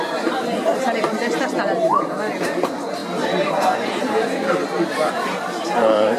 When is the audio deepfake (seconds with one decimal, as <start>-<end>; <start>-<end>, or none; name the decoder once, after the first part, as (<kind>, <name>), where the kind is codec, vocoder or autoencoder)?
0.0-3.0 (vocoder, BigVGAN v2); 5.1-6.2